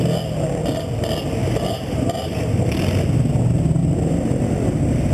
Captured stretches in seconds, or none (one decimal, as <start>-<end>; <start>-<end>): 0.0-1.4; 2.6-3.8; 4.4-5.1